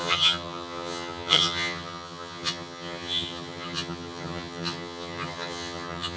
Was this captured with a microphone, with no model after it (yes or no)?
no